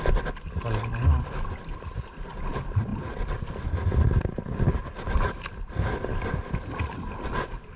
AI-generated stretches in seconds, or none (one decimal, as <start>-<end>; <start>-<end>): none